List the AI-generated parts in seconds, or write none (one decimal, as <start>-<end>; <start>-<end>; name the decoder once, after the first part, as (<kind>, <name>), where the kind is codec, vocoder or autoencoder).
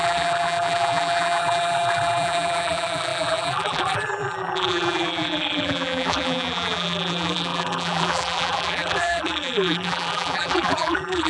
0.0-11.3 (vocoder, BigVGAN v2)